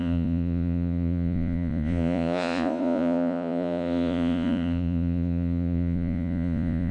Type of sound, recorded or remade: remade